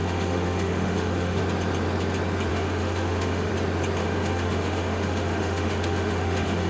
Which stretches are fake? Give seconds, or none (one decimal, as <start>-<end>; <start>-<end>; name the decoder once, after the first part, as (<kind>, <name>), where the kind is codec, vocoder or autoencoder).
0.0-1.4 (autoencoder, DAC-VAE); 2.5-3.5; 4.0-6.7